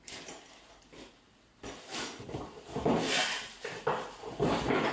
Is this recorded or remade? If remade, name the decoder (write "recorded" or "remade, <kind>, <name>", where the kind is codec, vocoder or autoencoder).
recorded